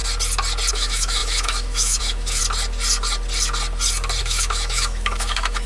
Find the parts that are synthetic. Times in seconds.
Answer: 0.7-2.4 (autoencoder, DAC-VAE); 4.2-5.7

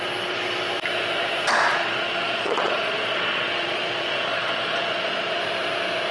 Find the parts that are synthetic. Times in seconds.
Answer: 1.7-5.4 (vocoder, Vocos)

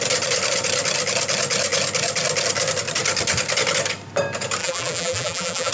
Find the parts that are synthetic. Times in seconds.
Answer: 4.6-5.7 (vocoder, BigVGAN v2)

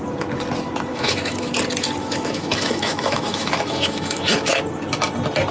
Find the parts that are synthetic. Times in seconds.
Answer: 0.9-1.5 (autoencoder, DAC-VAE); 2.0-4.6

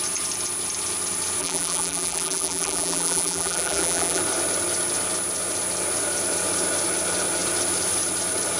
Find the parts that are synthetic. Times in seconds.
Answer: 1.4-4.2 (vocoder, BigVGAN v2)

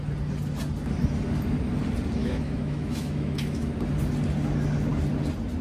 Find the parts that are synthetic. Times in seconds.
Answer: 2.2-3.7 (autoencoder, DAC-VAE)

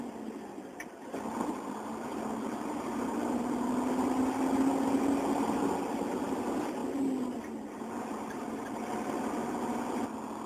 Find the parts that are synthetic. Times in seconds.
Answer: none